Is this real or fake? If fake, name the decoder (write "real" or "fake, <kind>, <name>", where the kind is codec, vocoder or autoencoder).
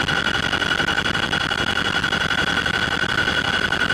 real